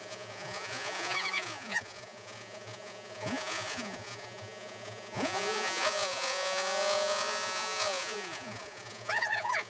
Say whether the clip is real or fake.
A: fake